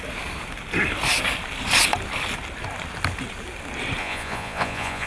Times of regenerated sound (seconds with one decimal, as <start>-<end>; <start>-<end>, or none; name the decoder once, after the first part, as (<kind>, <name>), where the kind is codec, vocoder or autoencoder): 4.0-5.1 (vocoder, Vocos)